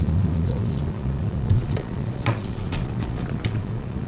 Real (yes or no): no